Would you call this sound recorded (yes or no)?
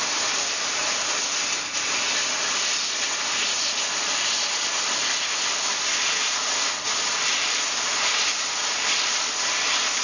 yes